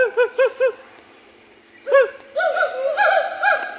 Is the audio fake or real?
real